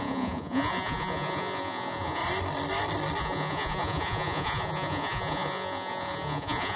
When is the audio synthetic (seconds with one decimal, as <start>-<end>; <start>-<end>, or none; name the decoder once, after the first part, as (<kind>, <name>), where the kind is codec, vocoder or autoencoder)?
0.0-2.2 (vocoder, Vocos); 3.2-6.8